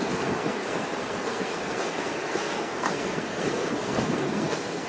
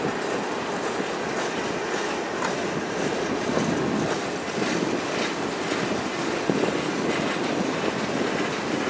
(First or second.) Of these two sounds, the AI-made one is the first